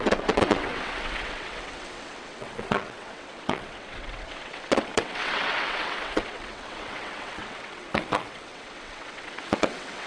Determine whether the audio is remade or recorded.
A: remade